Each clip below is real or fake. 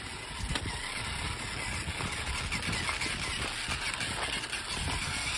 real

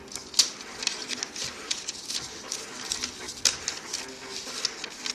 real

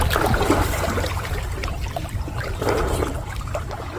fake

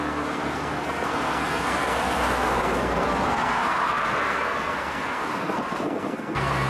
fake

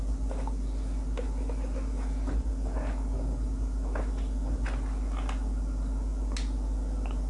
real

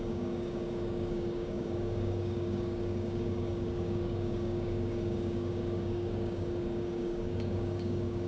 fake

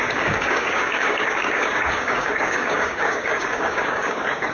fake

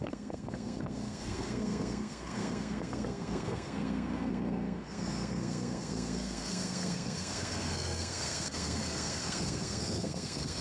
fake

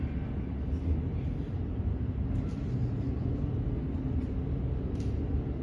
real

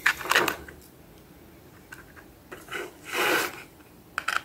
real